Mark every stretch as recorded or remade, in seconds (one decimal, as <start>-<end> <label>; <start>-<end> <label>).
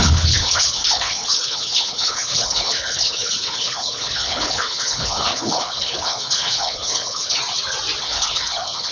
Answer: 0.0-7.4 remade; 7.4-8.0 recorded; 8.0-8.9 remade